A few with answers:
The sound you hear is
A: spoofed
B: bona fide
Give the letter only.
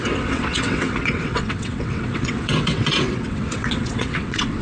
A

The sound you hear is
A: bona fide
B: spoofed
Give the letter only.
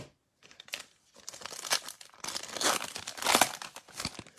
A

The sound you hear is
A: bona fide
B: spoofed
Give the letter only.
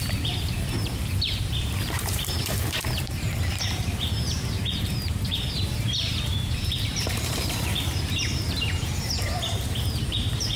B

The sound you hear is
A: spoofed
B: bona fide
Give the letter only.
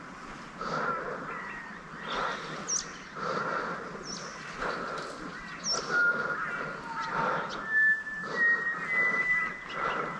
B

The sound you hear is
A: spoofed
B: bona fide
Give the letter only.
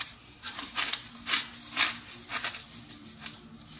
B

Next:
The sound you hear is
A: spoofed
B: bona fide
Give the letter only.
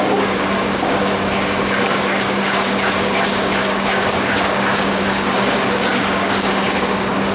A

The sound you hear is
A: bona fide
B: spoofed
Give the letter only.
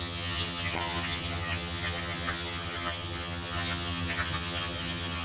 B